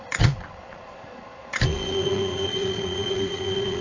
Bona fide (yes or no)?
no